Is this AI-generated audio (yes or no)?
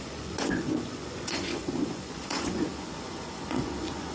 yes